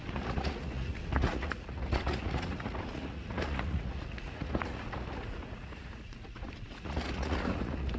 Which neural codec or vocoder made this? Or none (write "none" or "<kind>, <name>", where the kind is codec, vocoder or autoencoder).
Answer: vocoder, Vocos